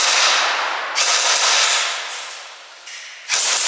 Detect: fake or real real